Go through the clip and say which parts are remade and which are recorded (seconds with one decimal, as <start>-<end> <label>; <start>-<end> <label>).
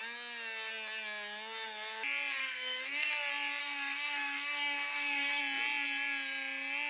0.0-2.4 recorded; 2.4-3.1 remade; 3.1-3.6 recorded; 3.6-5.4 remade; 5.4-6.9 recorded